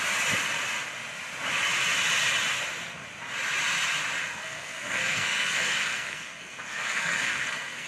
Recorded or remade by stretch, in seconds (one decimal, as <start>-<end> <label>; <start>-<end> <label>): 0.0-4.2 recorded; 4.2-7.9 remade